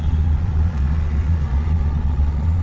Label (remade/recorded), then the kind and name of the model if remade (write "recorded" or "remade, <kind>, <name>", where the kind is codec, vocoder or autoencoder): remade, vocoder, Vocos